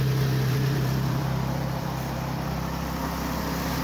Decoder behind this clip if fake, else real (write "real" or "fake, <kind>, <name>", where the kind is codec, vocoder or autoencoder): fake, vocoder, BigVGAN v2